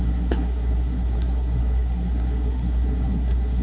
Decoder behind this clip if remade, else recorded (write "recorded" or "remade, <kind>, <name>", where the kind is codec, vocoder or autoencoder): remade, codec, SNAC